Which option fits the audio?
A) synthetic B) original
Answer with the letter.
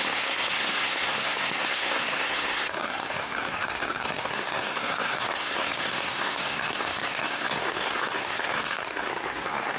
A